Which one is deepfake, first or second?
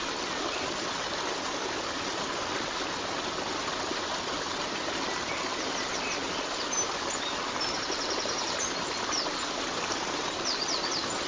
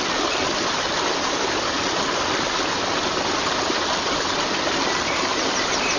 second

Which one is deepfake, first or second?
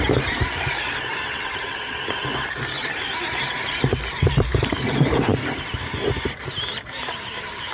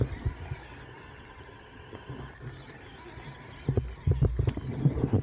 first